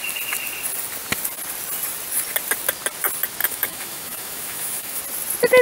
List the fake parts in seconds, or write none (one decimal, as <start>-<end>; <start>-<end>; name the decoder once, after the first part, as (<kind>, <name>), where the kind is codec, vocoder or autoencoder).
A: 3.4-5.0 (autoencoder, DAC-VAE)